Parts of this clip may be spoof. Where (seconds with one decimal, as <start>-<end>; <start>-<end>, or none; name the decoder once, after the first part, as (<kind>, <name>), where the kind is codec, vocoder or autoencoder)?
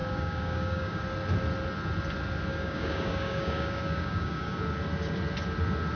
0.0-1.0 (codec, DAC); 2.5-4.6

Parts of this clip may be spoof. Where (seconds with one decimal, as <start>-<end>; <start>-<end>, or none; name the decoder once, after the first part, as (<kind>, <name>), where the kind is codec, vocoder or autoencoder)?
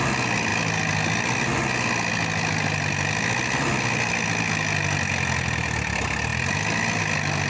none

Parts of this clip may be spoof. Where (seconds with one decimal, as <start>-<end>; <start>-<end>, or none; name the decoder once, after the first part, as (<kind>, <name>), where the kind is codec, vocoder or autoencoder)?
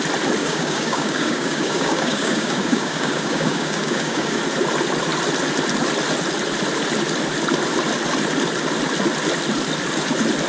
0.4-4.4 (codec, DAC)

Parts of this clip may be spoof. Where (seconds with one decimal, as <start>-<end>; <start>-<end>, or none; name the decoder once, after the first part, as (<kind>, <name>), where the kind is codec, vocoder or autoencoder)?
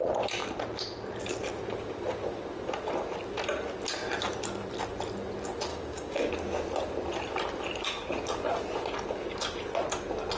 5.7-6.3 (codec, DAC)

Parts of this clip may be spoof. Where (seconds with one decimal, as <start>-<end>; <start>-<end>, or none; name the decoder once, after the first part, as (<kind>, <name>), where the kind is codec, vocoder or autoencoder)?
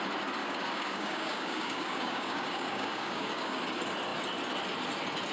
0.4-3.6 (codec, DAC)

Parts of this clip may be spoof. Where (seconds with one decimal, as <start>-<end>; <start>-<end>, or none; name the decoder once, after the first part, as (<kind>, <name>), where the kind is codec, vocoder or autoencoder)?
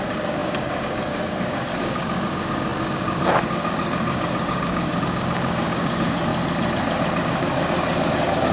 0.0-6.3 (codec, DAC); 7.2-8.5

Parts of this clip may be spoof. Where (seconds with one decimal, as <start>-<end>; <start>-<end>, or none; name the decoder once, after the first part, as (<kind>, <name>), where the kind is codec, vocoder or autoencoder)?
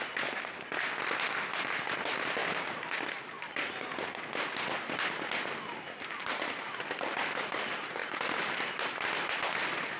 none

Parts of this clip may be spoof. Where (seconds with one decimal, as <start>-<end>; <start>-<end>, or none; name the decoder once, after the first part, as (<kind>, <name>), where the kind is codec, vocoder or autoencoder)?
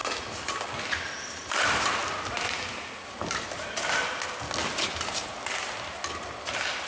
none